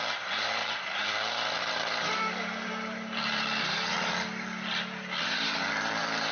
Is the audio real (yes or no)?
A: no